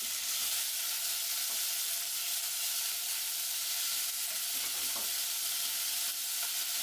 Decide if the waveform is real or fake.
real